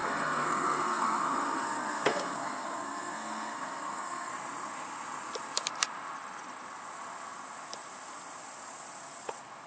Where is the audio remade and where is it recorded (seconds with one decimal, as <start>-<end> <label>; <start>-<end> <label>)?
0.0-4.3 remade; 4.3-9.7 recorded